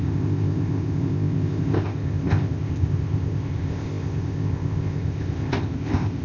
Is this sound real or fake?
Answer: fake